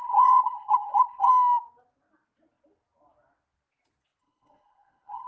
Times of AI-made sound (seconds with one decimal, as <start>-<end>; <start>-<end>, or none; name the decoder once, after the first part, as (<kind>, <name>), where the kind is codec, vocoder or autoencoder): 0.0-1.3 (codec, HILCodec); 4.2-5.3